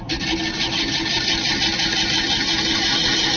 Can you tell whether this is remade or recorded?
recorded